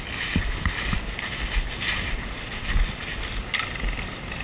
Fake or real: real